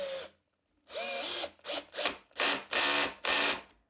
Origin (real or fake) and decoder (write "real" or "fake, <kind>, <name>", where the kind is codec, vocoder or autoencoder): real